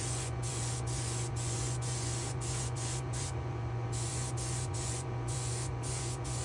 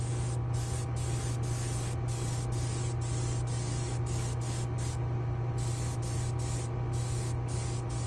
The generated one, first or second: first